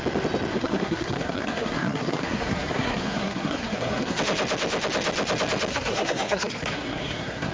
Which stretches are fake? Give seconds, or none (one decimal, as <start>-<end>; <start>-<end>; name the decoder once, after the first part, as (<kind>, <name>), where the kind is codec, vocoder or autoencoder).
0.5-4.2 (codec, SNAC); 5.7-7.5